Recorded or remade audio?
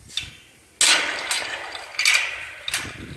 recorded